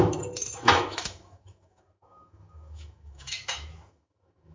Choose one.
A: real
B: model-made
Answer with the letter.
B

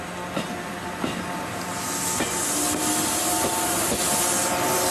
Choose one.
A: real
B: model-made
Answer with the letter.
A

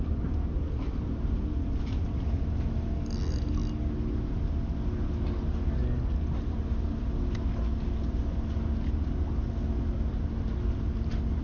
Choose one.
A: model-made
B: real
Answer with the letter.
B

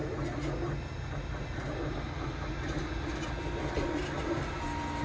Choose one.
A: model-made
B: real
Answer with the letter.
B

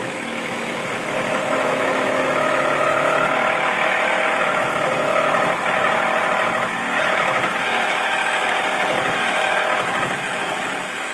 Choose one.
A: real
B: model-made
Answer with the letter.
B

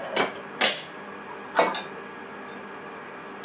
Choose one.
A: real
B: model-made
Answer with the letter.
A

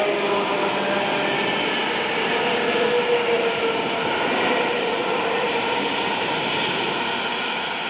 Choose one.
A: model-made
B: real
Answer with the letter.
B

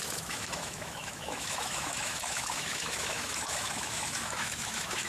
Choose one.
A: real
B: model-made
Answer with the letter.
B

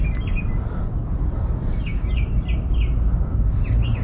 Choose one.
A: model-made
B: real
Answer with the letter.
B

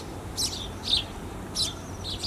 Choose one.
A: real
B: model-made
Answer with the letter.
A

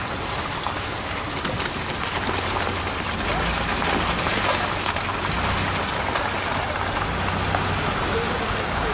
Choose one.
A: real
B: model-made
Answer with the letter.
A